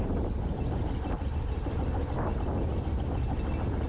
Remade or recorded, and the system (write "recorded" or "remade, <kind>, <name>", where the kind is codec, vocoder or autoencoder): recorded